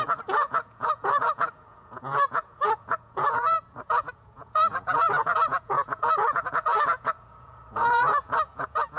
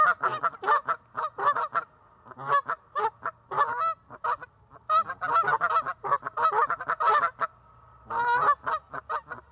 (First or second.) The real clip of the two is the second